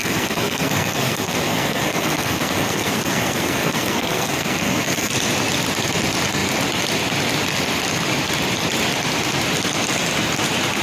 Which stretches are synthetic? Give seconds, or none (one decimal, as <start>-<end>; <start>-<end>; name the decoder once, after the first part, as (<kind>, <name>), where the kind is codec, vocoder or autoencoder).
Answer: 0.0-5.1 (codec, SNAC)